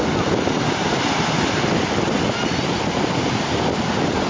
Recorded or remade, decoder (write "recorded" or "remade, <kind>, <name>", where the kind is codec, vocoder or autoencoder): recorded